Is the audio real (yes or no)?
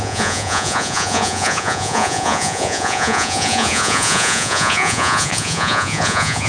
no